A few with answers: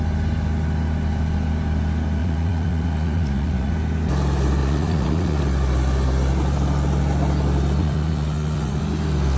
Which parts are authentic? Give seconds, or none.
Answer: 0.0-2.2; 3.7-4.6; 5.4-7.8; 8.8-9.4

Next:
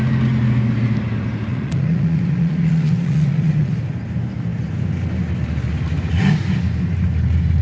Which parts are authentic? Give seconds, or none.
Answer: 0.0-1.5; 3.7-7.6

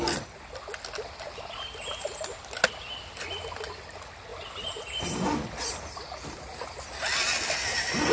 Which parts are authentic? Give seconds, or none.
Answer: 0.0-8.1

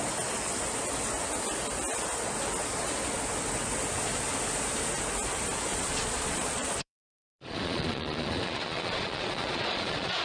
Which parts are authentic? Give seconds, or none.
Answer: 0.0-5.7

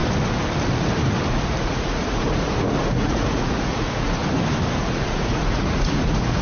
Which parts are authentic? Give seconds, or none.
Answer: 0.0-1.3; 4.2-4.8

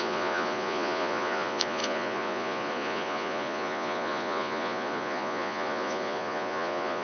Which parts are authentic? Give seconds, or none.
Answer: none

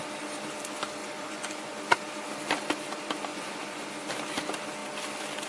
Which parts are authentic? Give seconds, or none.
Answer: 0.0-1.0; 1.8-3.3; 3.9-5.5

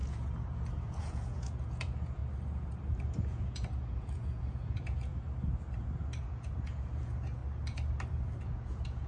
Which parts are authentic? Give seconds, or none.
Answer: 2.2-3.2; 5.1-6.2; 7.4-8.4